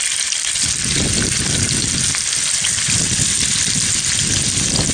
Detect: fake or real real